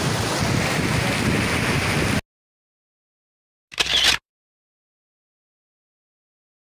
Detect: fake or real real